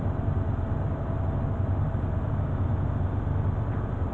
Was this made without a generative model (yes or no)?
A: no